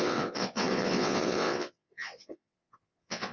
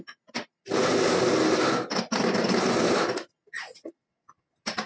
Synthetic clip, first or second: first